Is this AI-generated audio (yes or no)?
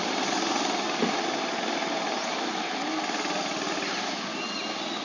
no